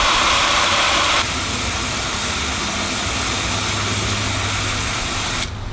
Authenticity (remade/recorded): recorded